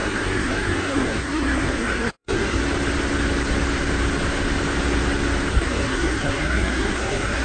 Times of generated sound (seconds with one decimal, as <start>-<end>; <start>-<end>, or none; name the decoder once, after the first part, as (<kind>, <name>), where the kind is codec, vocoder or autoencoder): 0.0-2.6 (codec, SNAC); 5.5-7.4